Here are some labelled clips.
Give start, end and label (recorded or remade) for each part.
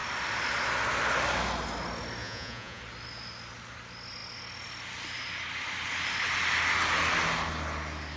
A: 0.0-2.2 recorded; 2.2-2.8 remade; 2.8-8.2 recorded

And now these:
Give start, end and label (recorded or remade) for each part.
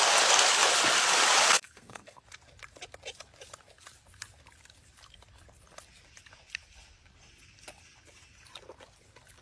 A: 0.0-1.5 recorded; 1.5-2.2 remade; 2.2-9.4 recorded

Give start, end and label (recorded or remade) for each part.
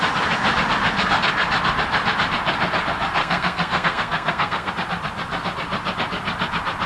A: 0.0-3.2 recorded; 3.2-4.7 remade; 4.7-6.9 recorded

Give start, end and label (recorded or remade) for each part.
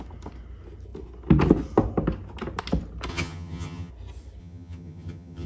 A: 0.0-3.1 recorded; 3.1-3.9 remade; 3.9-4.4 recorded; 4.4-5.5 remade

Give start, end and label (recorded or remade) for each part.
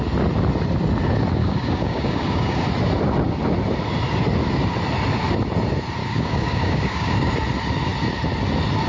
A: 0.0-1.4 recorded; 1.4-2.6 remade; 2.6-6.0 recorded; 6.0-7.3 remade; 7.3-8.9 recorded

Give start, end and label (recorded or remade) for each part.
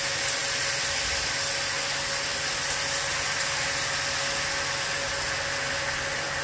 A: 0.0-6.4 recorded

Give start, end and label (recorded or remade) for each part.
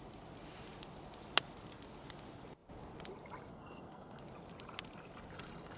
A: 0.0-3.5 recorded; 3.5-4.2 remade; 4.2-5.8 recorded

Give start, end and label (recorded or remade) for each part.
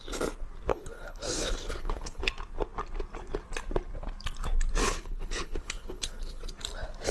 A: 0.0-0.7 recorded; 0.7-2.3 remade; 2.3-4.8 recorded; 4.8-6.4 remade; 6.4-7.1 recorded